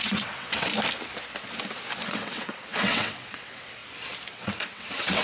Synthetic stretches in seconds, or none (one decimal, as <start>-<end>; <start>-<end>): 0.0-0.7; 2.0-3.8; 4.3-5.2